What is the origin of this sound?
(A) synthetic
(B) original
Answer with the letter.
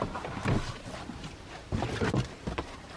B